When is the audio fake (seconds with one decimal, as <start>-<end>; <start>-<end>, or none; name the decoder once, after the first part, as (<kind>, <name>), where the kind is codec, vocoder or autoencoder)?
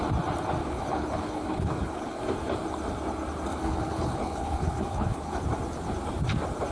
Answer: 0.6-2.2 (codec, HILCodec); 3.5-5.4